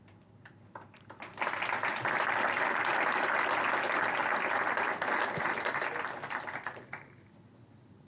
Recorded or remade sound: recorded